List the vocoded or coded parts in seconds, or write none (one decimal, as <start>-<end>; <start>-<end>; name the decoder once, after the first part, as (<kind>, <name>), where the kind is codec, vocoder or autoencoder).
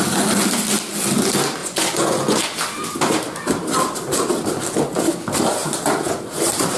1.6-2.4 (vocoder, Vocos)